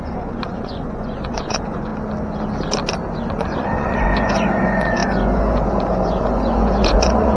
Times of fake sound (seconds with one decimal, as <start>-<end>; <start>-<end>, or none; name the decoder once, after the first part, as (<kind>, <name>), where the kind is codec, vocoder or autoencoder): 0.0-1.9 (vocoder, Vocos); 3.3-7.4